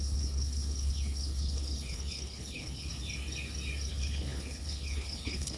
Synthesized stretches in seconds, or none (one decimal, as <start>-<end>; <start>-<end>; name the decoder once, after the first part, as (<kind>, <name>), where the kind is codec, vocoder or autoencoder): 0.0-2.9 (codec, HILCodec); 3.9-5.6